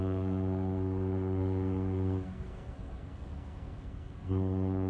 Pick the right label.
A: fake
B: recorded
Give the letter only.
A